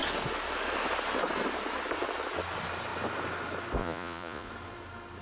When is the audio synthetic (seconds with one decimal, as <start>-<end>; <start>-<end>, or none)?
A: 3.8-4.5